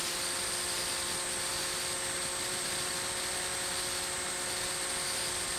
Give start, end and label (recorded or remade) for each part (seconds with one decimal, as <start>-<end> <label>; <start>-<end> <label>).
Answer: 0.0-5.6 recorded